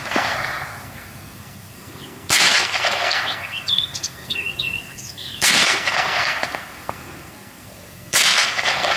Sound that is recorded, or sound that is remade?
remade